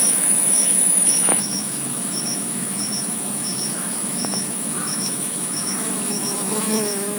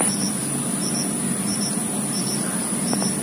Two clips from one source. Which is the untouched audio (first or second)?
second